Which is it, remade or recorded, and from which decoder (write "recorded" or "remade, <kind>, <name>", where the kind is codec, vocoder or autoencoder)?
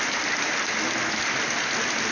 recorded